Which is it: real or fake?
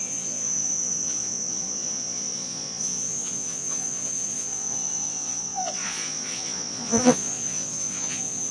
fake